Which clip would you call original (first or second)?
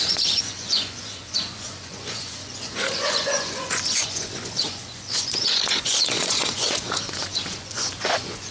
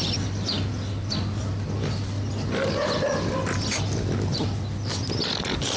second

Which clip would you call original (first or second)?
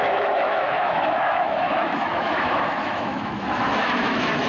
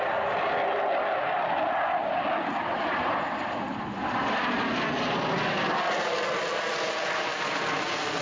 second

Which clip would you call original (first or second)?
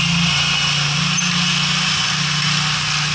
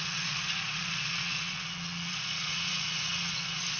first